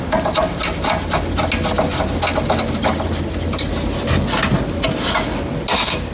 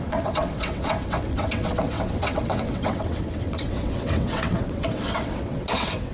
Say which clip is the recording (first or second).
first